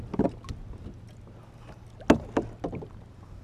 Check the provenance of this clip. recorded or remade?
recorded